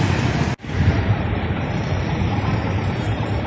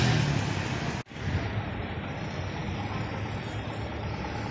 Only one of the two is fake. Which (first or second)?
first